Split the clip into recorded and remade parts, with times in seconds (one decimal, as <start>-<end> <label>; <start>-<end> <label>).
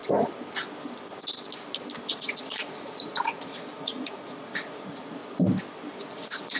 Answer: 0.0-2.1 recorded; 2.1-5.2 remade; 5.2-6.0 recorded; 6.0-6.6 remade